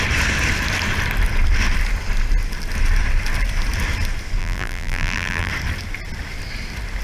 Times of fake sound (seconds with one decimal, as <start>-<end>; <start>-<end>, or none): 4.4-5.5